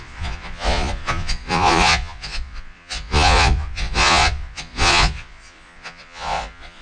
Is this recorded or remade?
remade